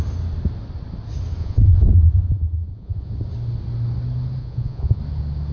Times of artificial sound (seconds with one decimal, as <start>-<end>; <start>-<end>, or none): 1.4-3.1; 4.4-5.0

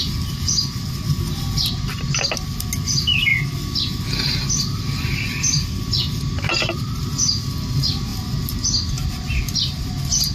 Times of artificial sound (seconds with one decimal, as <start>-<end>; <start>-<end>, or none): none

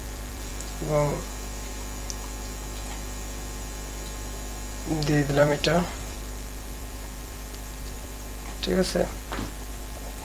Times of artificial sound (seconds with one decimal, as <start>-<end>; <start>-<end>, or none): 0.0-0.5; 5.3-10.2